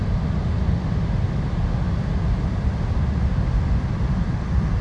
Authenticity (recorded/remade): recorded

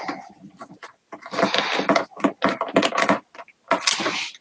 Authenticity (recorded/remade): recorded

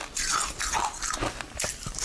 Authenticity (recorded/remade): recorded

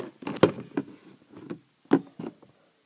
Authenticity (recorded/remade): recorded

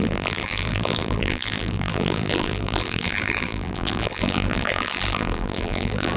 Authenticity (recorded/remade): remade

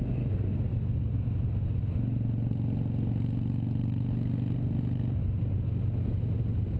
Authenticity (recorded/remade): recorded